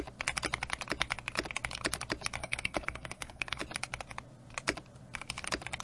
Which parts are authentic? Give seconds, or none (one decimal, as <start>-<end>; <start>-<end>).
0.0-2.4; 3.6-5.8